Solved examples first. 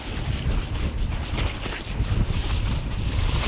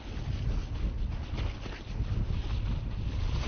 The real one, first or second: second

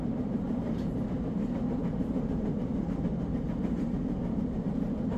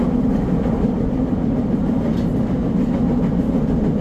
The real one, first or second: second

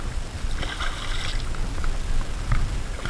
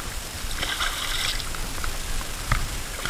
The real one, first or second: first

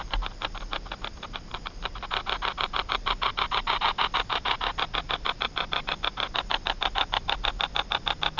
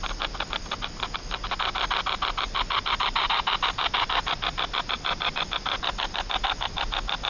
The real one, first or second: second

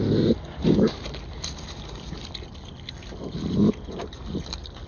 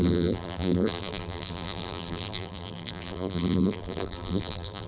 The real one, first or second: first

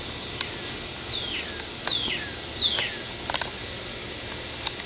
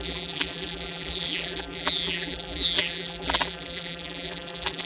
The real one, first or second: first